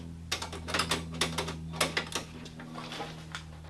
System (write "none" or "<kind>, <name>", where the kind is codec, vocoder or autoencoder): none